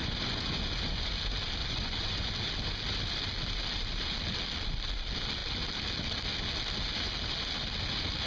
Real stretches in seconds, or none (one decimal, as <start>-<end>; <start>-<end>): 1.1-1.6; 2.3-8.3